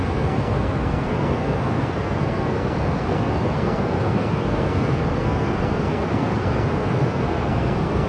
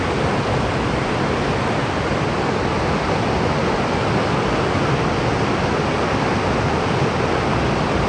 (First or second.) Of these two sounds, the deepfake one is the first